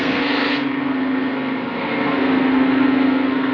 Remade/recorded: remade